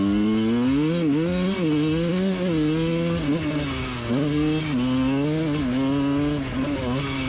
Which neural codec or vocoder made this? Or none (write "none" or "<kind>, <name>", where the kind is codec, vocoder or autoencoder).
none